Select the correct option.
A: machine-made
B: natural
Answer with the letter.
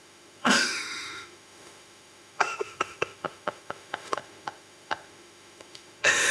A